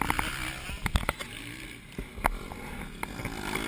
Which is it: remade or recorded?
recorded